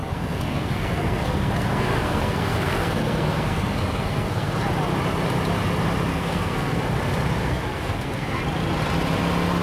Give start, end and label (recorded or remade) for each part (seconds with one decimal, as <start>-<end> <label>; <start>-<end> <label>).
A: 0.0-4.6 remade; 4.6-6.1 recorded; 6.1-6.8 remade; 6.8-7.4 recorded; 7.4-8.4 remade; 8.4-9.6 recorded